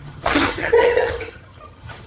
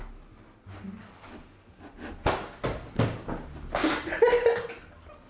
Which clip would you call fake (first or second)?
first